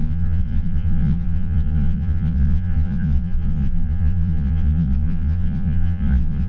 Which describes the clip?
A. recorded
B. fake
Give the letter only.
B